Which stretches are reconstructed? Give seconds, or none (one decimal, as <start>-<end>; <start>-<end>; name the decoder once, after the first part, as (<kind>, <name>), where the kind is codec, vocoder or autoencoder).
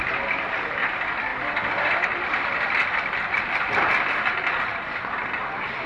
0.0-1.3 (vocoder, BigVGAN v2); 2.0-5.9